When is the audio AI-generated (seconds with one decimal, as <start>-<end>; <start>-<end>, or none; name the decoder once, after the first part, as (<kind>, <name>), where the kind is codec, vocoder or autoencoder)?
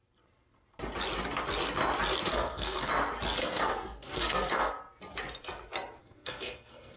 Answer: 2.3-2.9 (codec, SNAC); 3.4-4.7; 6.0-7.0